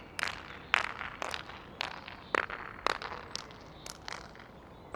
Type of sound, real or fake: real